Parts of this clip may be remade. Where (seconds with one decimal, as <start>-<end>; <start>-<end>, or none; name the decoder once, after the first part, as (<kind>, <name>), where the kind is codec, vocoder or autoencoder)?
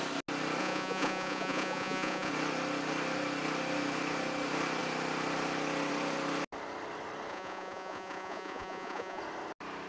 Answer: 0.6-2.3 (vocoder, Vocos); 7.3-9.2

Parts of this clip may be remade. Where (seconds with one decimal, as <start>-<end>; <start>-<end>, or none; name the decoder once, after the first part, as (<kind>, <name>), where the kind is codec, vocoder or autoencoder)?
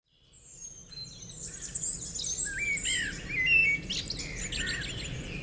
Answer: none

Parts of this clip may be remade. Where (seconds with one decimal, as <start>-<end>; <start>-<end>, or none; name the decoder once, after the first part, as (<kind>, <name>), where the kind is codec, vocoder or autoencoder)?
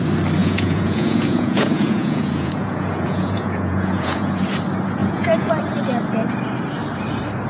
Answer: 0.4-4.4 (vocoder, Vocos); 5.0-5.5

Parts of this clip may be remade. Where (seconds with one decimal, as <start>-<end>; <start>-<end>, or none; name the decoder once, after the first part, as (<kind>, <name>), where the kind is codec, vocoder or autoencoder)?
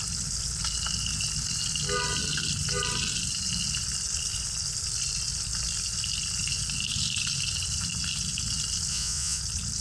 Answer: 8.9-9.4 (vocoder, Vocos)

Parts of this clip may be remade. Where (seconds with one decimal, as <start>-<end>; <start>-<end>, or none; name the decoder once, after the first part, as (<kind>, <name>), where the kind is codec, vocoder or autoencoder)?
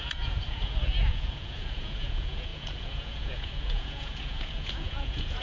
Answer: 0.0-5.4 (vocoder, Vocos)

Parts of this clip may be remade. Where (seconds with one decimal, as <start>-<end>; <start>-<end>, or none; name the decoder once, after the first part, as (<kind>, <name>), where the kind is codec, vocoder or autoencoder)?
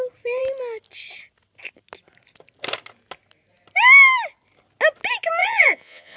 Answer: 5.4-6.2 (vocoder, Vocos)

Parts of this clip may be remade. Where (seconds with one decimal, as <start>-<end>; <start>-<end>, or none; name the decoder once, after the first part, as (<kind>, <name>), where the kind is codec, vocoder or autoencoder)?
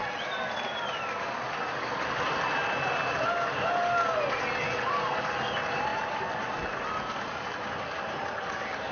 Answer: none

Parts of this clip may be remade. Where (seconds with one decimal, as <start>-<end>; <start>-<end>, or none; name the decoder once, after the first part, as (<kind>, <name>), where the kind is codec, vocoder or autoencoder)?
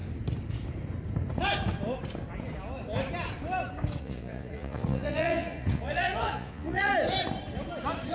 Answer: 4.0-6.9 (vocoder, Vocos)